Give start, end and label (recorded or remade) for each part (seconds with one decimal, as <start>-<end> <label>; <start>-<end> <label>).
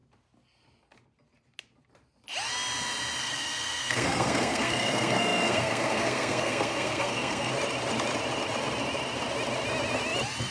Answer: 0.0-3.2 recorded; 3.2-7.5 remade; 7.5-10.5 recorded